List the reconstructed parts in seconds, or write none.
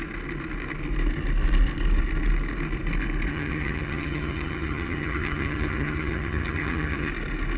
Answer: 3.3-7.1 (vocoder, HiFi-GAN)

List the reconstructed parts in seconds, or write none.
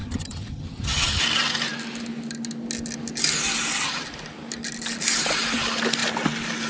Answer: 0.0-1.2 (vocoder, HiFi-GAN)